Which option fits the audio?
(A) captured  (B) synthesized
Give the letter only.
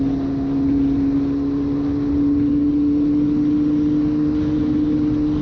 A